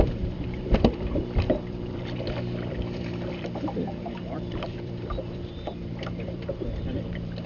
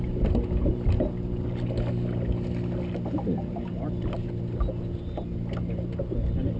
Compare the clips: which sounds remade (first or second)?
first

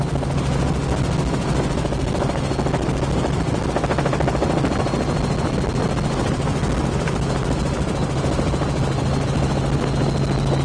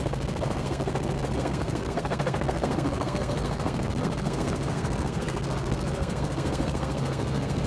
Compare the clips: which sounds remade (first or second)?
second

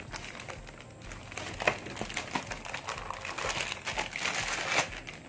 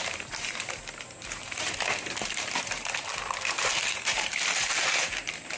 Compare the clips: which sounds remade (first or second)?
second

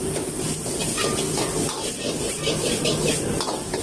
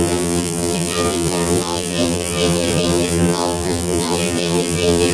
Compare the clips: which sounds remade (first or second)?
second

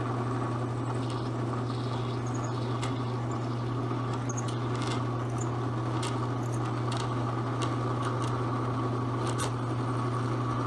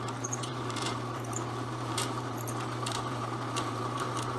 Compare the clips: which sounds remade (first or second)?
second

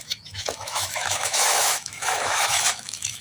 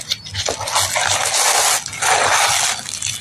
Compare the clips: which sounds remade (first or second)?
first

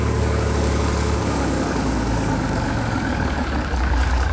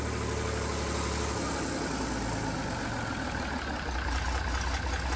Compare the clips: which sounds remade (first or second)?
first